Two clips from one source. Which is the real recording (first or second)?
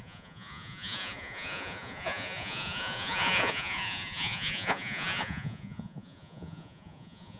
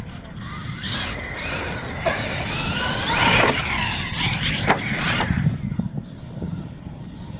second